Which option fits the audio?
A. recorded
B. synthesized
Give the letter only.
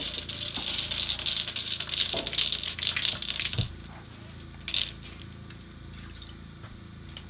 A